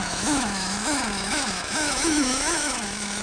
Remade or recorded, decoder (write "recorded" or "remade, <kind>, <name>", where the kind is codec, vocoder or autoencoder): remade, autoencoder, DAC-VAE